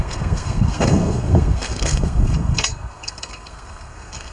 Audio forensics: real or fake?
fake